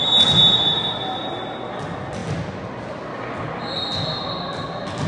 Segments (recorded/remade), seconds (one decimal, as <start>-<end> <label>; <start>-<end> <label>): 0.0-5.1 recorded